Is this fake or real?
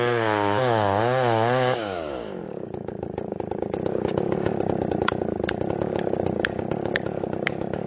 fake